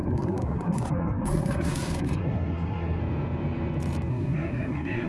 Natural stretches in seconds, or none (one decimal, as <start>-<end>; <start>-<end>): 3.0-4.1